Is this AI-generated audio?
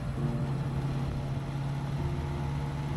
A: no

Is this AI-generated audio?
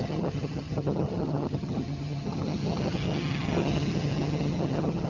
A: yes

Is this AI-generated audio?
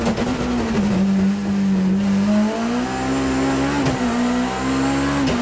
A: no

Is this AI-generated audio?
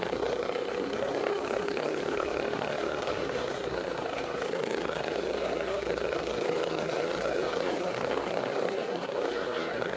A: yes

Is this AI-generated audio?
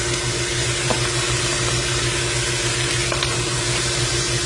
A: no